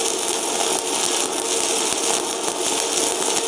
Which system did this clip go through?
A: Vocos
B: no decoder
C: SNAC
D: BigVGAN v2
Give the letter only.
B